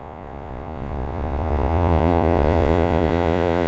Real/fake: fake